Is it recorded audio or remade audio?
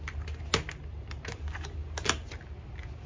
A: recorded